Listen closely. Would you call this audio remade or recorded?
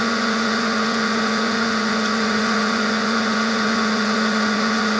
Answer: remade